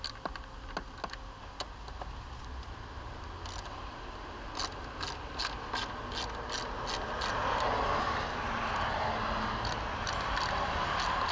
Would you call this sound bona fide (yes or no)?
yes